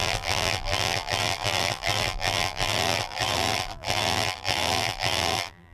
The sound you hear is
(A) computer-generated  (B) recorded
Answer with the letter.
A